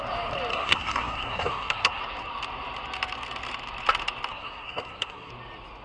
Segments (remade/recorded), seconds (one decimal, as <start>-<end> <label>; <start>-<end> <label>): 0.0-0.5 recorded; 0.5-2.0 remade; 2.0-4.3 recorded; 4.3-5.3 remade; 5.3-5.8 recorded